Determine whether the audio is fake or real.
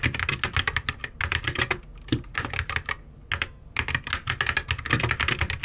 real